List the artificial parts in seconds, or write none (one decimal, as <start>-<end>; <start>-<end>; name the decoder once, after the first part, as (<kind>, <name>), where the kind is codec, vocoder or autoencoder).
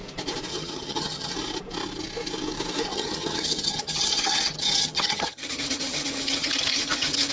0.5-1.3 (vocoder, HiFi-GAN); 2.9-7.3